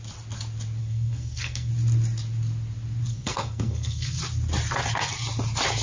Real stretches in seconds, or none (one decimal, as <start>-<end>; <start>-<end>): 0.0-0.8; 1.7-3.1; 4.2-5.8